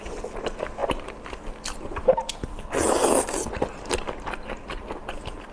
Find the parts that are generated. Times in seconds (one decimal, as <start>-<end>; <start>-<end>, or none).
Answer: none